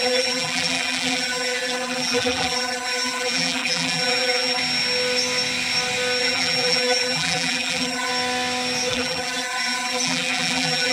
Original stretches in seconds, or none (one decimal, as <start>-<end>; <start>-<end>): 4.6-6.2; 8.1-8.9